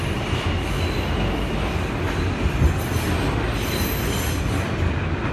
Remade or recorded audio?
recorded